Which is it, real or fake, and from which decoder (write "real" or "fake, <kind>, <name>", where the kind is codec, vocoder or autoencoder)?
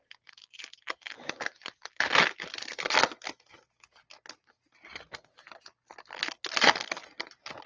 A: real